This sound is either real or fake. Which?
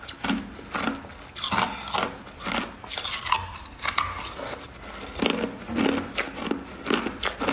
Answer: real